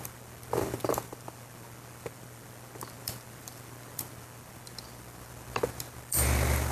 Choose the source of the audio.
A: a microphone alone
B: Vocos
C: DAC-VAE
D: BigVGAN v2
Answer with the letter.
D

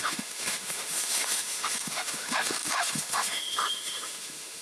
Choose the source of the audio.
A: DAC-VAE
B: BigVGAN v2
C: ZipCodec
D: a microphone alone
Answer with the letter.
A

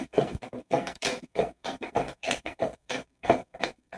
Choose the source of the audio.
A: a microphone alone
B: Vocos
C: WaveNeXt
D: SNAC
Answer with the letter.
D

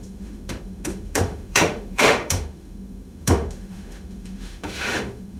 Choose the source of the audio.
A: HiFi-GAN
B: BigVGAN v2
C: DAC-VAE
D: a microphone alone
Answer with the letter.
C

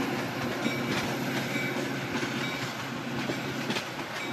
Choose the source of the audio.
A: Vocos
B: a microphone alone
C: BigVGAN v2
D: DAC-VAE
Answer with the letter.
B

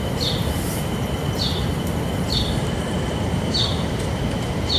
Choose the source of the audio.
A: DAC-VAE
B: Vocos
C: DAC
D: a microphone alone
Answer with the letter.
D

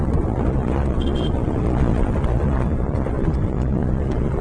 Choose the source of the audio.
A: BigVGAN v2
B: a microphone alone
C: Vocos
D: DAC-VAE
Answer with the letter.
C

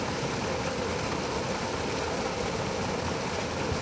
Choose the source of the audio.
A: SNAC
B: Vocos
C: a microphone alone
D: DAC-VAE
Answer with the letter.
C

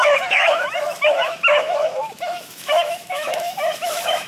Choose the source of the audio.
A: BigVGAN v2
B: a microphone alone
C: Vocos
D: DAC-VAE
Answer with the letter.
D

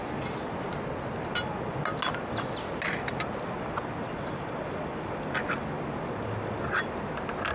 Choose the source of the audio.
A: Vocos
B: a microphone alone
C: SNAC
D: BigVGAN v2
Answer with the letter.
B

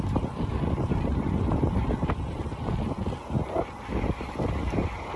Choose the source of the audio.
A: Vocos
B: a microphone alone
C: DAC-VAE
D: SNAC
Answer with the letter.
B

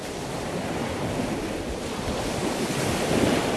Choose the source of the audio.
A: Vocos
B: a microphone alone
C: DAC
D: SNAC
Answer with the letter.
B